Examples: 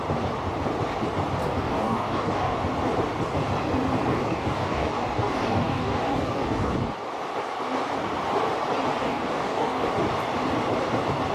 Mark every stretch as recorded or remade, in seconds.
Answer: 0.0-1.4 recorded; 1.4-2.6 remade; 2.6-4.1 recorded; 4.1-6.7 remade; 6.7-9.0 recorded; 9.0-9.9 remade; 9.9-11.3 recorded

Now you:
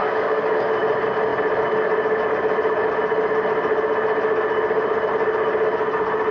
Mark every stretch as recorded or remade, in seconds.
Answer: 0.0-0.7 remade; 0.7-6.3 recorded

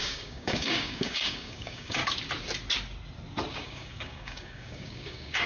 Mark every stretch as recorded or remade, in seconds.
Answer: 0.0-2.0 remade; 2.0-3.5 recorded; 3.5-5.5 remade

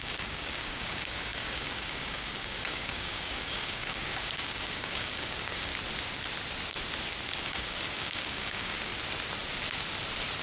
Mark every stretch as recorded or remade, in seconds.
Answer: 0.0-5.7 remade; 5.7-7.4 recorded; 7.4-8.9 remade; 8.9-10.4 recorded

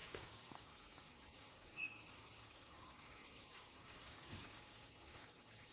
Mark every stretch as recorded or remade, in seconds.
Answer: 0.0-5.7 remade

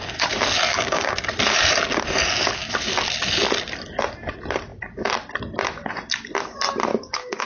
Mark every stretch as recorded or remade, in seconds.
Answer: 0.0-0.7 recorded; 0.7-1.3 remade; 1.3-6.9 recorded; 6.9-7.5 remade

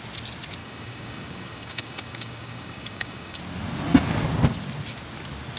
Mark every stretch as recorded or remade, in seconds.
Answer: 0.0-0.6 recorded; 0.6-3.4 remade; 3.4-5.6 recorded

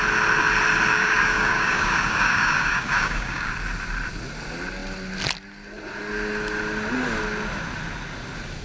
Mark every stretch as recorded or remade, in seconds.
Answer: 0.0-0.9 recorded; 0.9-3.5 remade; 3.5-8.6 recorded